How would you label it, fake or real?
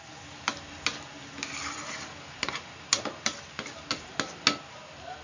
real